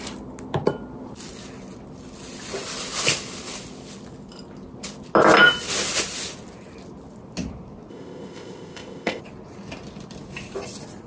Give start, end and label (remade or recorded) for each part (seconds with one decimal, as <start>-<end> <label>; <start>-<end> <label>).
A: 0.0-7.9 recorded; 7.9-9.2 remade; 9.2-11.1 recorded